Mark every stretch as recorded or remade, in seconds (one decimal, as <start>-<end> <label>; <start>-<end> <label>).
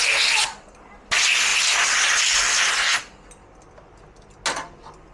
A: 0.0-1.5 recorded; 1.5-2.7 remade; 2.7-5.1 recorded